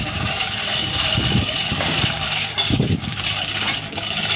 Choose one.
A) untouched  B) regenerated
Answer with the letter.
B